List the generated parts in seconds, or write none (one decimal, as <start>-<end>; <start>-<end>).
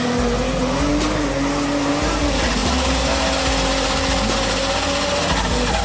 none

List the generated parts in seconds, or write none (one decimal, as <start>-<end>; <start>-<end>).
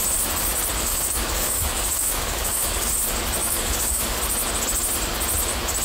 0.9-2.9; 3.4-4.2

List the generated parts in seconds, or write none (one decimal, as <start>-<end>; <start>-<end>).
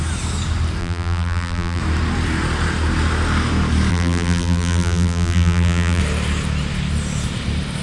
0.8-1.8; 3.9-6.0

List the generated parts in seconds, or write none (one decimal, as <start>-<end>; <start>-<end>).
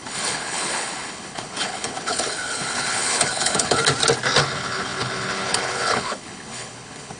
0.0-3.8; 4.4-7.2